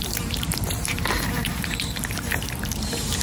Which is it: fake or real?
fake